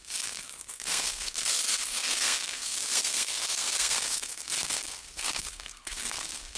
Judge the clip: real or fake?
fake